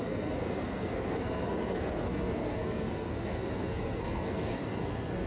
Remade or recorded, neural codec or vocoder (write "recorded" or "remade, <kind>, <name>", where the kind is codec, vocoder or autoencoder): remade, codec, SNAC